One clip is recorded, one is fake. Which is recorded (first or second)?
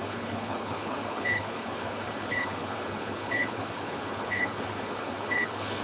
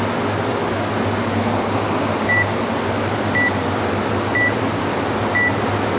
second